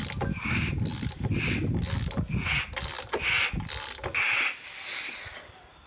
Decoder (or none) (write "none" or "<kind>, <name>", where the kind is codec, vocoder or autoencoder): none